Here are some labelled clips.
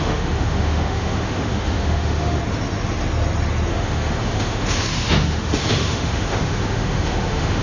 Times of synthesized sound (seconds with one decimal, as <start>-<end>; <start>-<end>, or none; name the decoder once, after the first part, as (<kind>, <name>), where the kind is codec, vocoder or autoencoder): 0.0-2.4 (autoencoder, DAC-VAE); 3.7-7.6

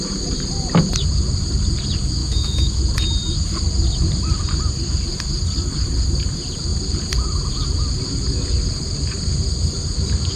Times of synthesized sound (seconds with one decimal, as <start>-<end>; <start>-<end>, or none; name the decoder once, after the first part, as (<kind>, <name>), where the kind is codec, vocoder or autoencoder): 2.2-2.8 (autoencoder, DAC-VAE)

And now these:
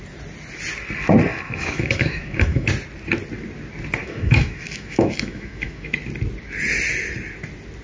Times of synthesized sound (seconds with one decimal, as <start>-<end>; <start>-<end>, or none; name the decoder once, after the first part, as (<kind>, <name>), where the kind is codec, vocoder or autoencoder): 1.3-2.7 (autoencoder, DAC-VAE); 4.0-5.9